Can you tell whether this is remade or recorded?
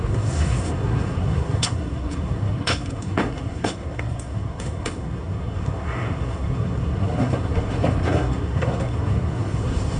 remade